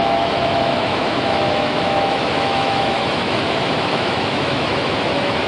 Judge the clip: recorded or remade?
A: remade